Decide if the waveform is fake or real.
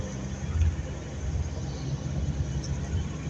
real